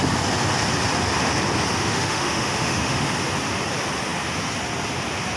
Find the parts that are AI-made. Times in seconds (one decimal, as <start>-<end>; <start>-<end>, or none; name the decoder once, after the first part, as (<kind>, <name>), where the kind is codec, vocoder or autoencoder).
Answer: 1.7-3.1 (autoencoder, DAC-VAE)